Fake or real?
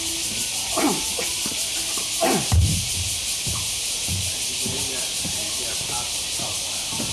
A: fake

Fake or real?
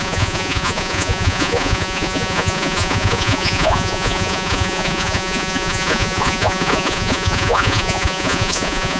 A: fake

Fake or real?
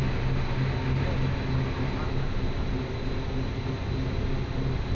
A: real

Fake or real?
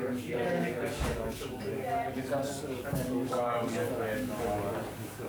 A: fake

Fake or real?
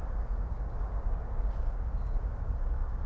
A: fake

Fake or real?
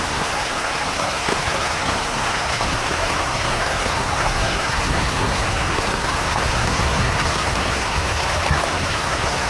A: fake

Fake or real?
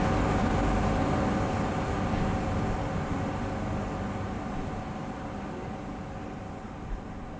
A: real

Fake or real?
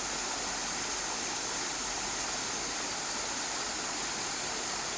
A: real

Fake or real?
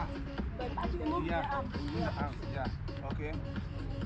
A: real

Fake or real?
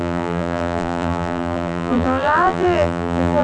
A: fake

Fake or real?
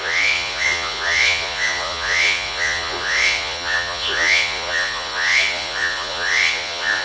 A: fake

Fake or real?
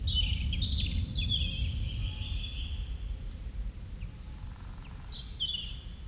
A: real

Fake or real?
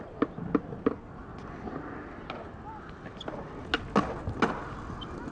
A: real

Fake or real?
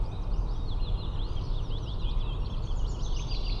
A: real